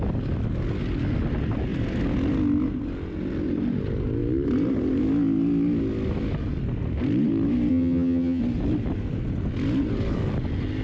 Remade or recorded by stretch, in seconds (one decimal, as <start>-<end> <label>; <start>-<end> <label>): 0.0-7.7 recorded; 7.7-8.4 remade; 8.4-10.8 recorded